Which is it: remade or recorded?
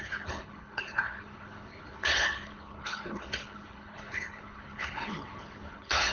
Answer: remade